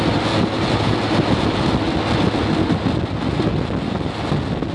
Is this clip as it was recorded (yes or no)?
yes